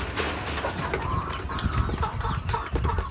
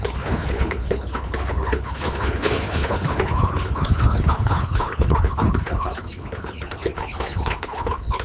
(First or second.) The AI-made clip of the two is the second